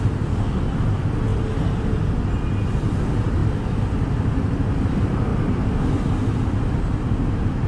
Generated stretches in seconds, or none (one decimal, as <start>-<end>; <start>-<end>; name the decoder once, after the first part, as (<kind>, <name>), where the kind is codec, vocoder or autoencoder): none